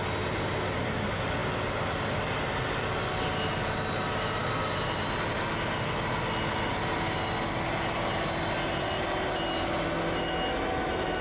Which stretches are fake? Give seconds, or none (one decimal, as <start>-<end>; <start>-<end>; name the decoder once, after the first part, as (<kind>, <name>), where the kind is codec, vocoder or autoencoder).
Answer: none

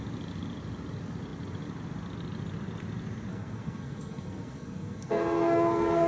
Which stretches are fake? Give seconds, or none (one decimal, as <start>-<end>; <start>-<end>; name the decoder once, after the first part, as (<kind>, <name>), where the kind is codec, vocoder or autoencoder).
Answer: 3.3-6.1 (codec, SNAC)

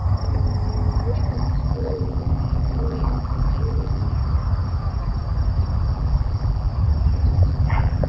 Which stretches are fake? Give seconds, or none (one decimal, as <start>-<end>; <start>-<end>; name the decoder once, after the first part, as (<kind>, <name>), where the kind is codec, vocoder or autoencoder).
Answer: 1.3-4.0 (vocoder, BigVGAN v2); 5.9-6.7; 7.3-8.1

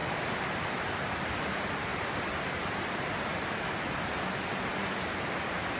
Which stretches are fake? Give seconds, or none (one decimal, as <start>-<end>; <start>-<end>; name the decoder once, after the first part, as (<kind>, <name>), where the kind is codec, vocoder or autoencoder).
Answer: 0.0-1.3 (vocoder, BigVGAN v2)

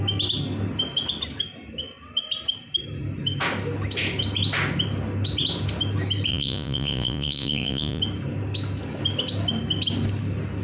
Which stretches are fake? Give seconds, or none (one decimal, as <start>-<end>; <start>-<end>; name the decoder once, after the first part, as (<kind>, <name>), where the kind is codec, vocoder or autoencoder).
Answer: 6.3-8.0 (vocoder, Vocos)

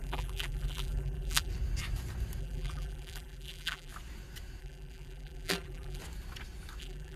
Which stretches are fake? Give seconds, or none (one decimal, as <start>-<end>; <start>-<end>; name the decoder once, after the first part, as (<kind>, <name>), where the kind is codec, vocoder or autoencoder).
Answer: 0.0-1.5 (vocoder, BigVGAN v2); 2.4-3.9; 4.6-6.0; 6.8-7.2

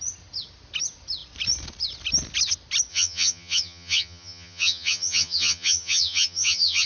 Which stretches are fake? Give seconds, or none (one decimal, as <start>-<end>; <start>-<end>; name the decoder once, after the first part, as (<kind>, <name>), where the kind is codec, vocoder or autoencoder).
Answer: 2.9-6.9 (vocoder, HiFi-GAN)

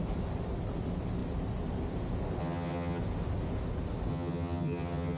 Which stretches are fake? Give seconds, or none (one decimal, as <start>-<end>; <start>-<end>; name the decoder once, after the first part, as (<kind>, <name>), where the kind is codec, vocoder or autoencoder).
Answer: 2.4-3.0 (vocoder, HiFi-GAN); 4.1-5.2